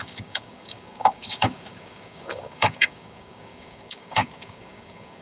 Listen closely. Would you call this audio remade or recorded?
remade